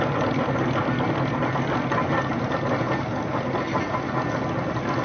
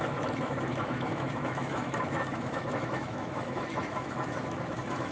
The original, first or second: first